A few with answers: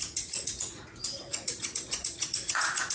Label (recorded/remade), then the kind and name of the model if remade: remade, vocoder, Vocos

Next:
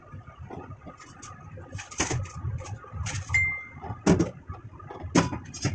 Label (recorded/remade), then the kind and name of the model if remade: recorded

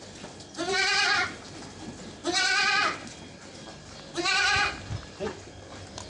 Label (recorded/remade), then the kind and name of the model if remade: recorded